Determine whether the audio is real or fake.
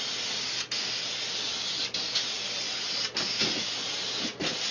real